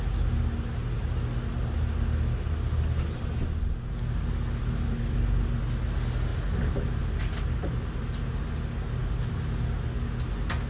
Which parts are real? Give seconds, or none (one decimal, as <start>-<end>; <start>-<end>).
0.0-10.7